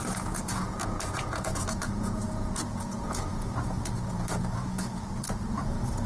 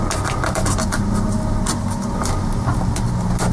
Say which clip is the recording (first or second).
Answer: second